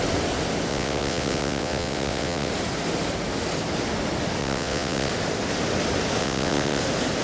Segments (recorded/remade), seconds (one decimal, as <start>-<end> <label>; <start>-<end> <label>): 0.0-0.7 recorded; 0.7-2.5 remade; 2.5-4.4 recorded; 4.4-5.1 remade; 5.1-6.2 recorded; 6.2-6.8 remade; 6.8-7.2 recorded